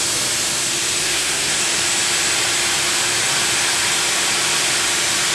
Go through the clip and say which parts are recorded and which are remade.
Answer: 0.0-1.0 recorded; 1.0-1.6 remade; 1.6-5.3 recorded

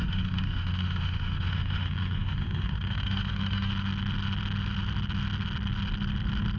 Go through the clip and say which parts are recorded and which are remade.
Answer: 0.0-3.7 remade; 3.7-6.6 recorded

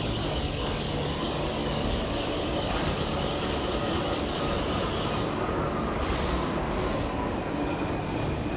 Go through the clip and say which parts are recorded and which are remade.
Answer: 0.0-8.6 remade